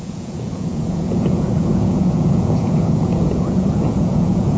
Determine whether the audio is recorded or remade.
remade